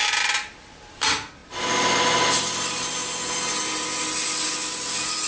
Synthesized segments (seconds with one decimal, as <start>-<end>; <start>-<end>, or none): none